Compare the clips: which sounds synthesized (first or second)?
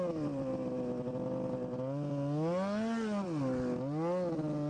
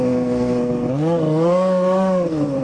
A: second